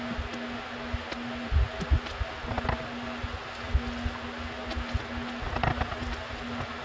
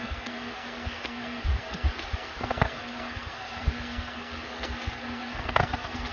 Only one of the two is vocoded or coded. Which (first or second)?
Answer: second